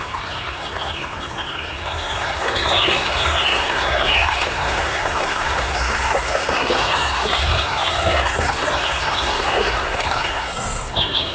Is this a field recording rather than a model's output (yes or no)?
no